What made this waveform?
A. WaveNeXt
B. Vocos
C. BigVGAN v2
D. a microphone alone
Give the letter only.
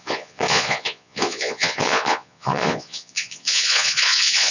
B